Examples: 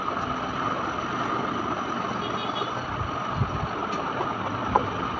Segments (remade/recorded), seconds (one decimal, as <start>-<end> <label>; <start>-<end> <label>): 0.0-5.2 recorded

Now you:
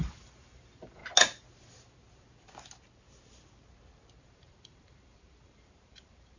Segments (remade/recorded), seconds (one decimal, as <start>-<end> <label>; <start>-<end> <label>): 0.0-1.0 remade; 1.0-4.2 recorded; 4.2-6.4 remade

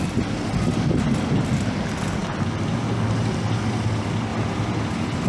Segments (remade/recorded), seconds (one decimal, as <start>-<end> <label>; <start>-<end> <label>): 0.0-5.3 recorded

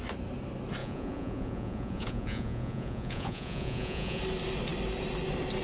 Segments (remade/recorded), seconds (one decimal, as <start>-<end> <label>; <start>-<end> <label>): 0.0-0.8 recorded; 0.8-4.2 remade; 4.2-5.6 recorded